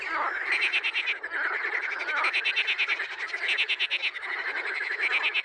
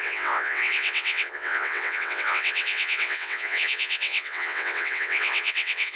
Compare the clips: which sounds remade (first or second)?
second